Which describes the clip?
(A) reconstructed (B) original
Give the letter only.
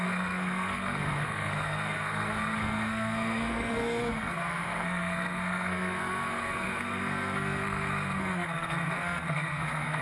A